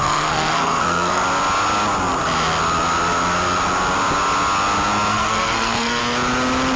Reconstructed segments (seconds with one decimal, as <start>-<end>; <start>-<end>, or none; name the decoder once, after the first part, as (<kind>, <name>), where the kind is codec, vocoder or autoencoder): 0.0-1.2 (codec, SNAC); 5.1-6.0